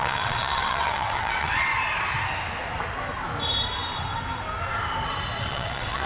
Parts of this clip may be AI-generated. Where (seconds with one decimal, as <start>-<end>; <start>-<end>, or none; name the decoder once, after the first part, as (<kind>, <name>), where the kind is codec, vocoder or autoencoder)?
0.0-1.7 (vocoder, WaveNeXt); 5.4-6.1

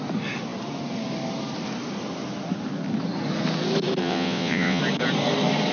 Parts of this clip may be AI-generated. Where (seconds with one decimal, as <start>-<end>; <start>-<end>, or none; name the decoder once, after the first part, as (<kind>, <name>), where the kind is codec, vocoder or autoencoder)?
4.0-4.8 (vocoder, WaveNeXt)